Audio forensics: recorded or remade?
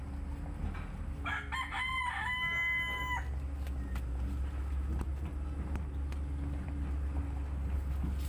recorded